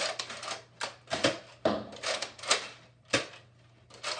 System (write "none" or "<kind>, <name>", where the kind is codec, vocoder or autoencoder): none